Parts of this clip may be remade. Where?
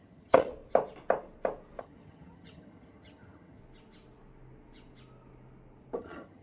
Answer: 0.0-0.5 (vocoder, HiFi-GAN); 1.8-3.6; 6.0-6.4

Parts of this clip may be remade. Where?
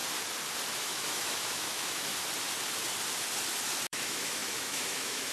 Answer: 0.8-2.1 (autoencoder, DAC-VAE); 3.9-5.3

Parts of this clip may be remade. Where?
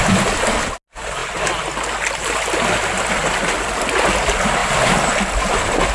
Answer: none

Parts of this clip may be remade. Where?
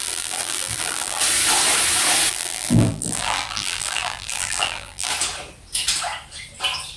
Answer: 0.0-1.2 (vocoder, BigVGAN v2); 2.3-5.1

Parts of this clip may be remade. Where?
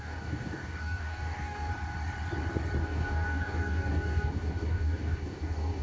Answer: 0.0-1.7 (codec, DAC); 2.8-5.8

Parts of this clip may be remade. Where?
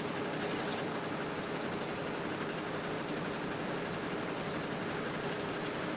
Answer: 0.0-0.7 (vocoder, BigVGAN v2); 2.9-6.0